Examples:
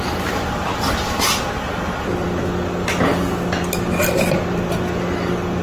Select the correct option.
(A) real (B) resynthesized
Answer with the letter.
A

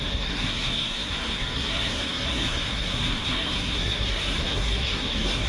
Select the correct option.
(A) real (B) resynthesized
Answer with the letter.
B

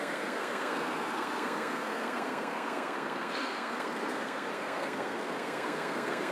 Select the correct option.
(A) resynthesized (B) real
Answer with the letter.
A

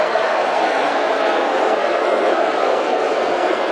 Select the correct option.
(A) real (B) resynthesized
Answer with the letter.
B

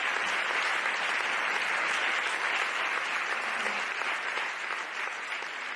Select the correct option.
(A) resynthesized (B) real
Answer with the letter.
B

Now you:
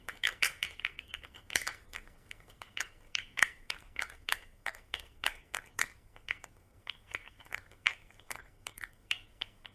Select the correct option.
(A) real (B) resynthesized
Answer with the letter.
B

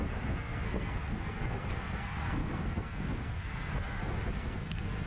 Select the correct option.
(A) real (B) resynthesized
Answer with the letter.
B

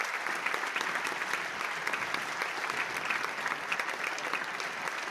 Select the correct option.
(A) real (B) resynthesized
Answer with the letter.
A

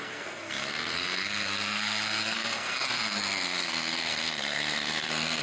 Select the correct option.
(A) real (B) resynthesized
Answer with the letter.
B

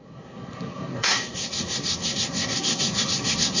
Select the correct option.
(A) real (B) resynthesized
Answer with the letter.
B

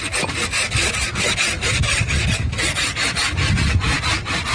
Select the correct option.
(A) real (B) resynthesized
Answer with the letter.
A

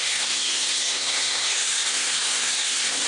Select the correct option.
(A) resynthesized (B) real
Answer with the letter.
A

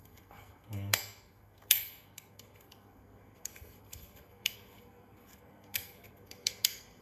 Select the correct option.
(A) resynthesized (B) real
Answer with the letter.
A